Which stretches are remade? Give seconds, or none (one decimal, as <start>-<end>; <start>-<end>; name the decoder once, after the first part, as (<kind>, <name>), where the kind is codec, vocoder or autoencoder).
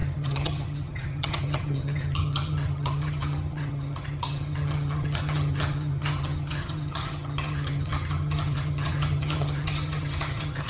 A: 0.0-10.7 (vocoder, HiFi-GAN)